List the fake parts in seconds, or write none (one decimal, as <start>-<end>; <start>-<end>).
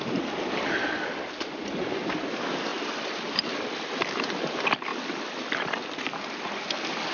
none